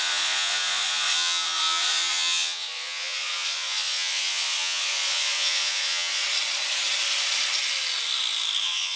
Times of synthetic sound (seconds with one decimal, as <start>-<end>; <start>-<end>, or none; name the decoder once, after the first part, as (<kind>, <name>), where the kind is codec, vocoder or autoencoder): 0.0-6.2 (vocoder, Vocos); 8.6-9.0